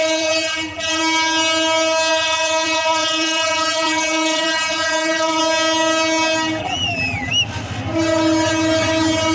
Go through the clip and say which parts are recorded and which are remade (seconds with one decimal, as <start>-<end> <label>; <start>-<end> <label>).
0.0-1.0 remade; 1.0-2.1 recorded; 2.1-5.4 remade; 5.4-6.6 recorded; 6.6-7.3 remade; 7.3-9.3 recorded